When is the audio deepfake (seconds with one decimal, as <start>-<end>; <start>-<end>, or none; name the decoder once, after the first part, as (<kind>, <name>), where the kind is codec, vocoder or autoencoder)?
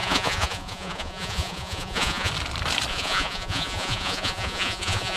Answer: 0.0-2.3 (vocoder, Vocos); 2.9-5.2